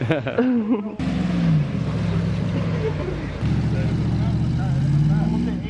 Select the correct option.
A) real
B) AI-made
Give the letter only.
A